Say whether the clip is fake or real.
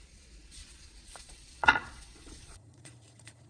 fake